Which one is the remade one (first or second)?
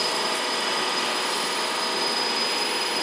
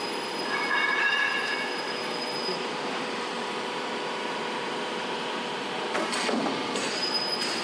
second